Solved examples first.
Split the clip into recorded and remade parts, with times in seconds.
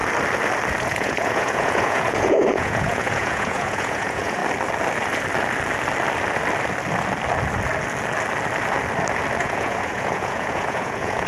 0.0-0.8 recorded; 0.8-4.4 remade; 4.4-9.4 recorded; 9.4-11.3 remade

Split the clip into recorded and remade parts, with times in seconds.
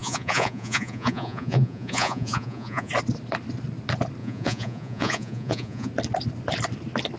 0.0-2.9 remade; 2.9-4.2 recorded; 4.2-5.9 remade; 5.9-7.2 recorded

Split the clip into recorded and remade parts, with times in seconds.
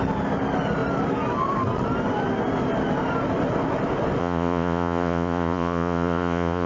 0.0-4.2 recorded; 4.2-6.7 remade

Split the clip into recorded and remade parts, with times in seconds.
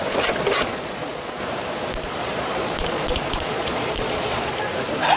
0.0-0.7 recorded; 0.7-1.4 remade; 1.4-2.2 recorded; 2.2-4.5 remade; 4.5-5.2 recorded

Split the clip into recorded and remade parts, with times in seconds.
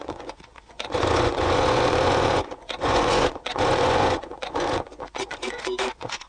0.0-6.3 remade